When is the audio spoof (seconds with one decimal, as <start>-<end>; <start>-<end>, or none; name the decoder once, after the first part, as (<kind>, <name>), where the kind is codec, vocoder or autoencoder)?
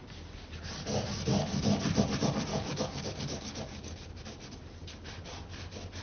1.3-1.8 (codec, DAC); 2.5-4.1